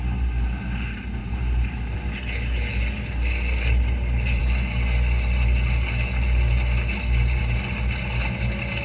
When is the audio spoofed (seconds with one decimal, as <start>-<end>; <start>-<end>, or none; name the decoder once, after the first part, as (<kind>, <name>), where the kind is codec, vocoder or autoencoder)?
1.2-1.7 (vocoder, BigVGAN v2)